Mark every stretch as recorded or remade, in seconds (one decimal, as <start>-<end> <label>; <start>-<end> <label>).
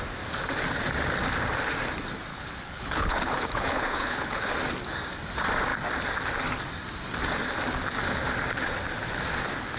0.0-2.3 recorded; 2.3-4.5 remade; 4.5-9.8 recorded